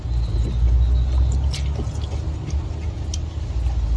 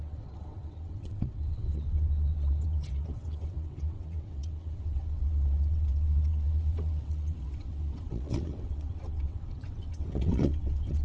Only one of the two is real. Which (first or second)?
first